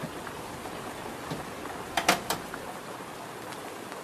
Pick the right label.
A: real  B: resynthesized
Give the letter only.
A